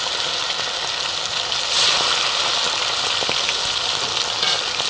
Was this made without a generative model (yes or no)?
yes